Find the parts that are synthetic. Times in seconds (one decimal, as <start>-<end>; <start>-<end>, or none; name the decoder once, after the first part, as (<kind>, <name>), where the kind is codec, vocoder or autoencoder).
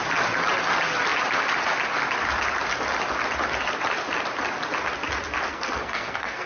5.5-6.5 (codec, SNAC)